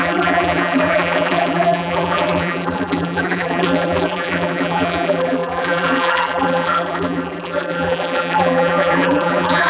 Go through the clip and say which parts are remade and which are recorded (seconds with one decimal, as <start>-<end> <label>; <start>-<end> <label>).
0.0-9.7 remade